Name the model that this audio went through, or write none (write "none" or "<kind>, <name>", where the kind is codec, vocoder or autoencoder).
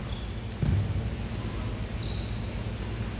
none